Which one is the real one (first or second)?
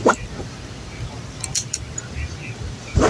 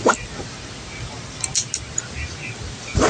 second